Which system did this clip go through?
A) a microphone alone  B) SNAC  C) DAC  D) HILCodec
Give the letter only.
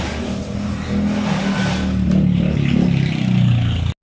A